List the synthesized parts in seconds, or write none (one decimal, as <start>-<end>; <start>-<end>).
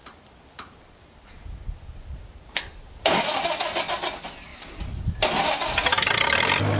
0.0-2.6